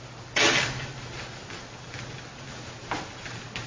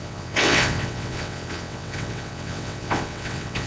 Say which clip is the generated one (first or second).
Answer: second